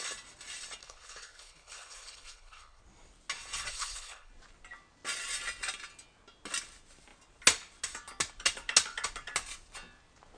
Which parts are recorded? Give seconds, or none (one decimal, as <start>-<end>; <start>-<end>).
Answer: 0.0-0.8; 2.8-3.7; 4.3-10.4